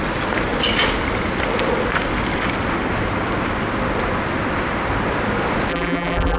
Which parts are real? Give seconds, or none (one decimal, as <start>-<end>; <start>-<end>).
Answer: 0.0-5.7